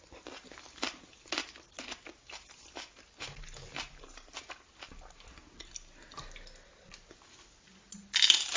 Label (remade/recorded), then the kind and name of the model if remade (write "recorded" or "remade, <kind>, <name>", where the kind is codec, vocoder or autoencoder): recorded